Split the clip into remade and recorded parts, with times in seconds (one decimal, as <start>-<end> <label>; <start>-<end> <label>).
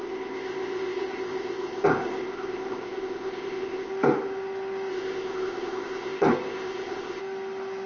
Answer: 0.0-3.9 remade; 3.9-4.9 recorded; 4.9-7.2 remade; 7.2-7.9 recorded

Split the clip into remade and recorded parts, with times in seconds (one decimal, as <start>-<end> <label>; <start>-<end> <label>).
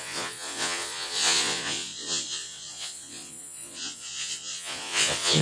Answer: 0.0-5.4 remade